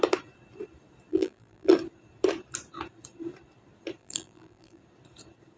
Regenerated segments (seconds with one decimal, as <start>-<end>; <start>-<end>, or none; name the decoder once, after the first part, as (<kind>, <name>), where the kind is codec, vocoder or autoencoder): 1.1-1.7 (vocoder, BigVGAN v2); 4.0-4.8